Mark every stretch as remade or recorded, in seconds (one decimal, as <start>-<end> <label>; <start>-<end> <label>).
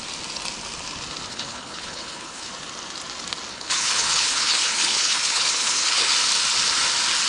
0.0-1.3 recorded; 1.3-2.5 remade; 2.5-3.5 recorded; 3.5-6.1 remade; 6.1-7.3 recorded